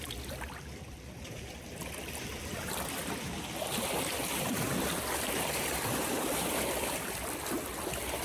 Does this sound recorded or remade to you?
remade